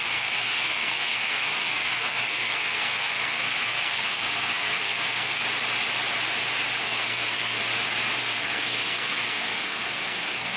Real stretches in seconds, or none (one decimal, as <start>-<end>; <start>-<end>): 5.4-6.8; 7.6-8.2